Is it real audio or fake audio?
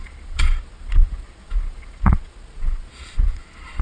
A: fake